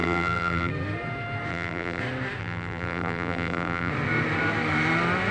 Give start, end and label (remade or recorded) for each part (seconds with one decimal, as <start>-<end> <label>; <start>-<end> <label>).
0.0-0.7 remade; 0.7-1.5 recorded; 1.5-2.0 remade; 2.0-2.4 recorded; 2.4-3.9 remade; 3.9-5.3 recorded

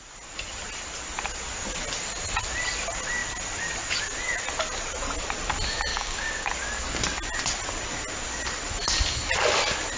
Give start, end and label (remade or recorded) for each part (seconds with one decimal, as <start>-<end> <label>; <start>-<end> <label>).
0.0-5.9 recorded; 5.9-6.5 remade; 6.5-10.0 recorded

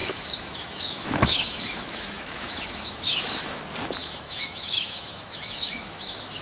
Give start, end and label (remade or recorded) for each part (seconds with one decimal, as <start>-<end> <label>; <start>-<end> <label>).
0.0-3.6 remade; 3.6-4.0 recorded; 4.0-6.4 remade